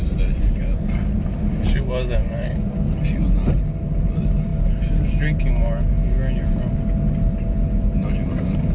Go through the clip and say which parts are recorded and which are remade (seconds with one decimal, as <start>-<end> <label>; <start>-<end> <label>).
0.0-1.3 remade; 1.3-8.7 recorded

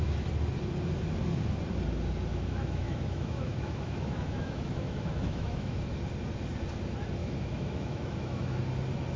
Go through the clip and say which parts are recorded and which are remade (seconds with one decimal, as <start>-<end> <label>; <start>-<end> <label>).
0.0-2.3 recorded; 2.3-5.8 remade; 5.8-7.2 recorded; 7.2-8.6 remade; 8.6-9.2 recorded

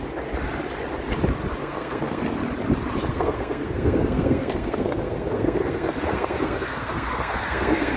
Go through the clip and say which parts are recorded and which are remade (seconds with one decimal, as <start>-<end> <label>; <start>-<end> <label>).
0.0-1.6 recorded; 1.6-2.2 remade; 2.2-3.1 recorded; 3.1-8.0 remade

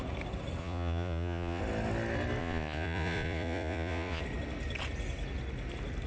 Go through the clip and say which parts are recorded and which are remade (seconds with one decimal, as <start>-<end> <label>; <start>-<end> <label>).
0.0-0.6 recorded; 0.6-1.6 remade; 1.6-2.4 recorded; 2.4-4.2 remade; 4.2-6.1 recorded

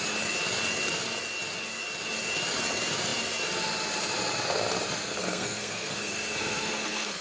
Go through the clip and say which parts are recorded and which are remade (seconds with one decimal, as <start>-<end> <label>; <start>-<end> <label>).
0.0-5.2 recorded; 5.2-7.2 remade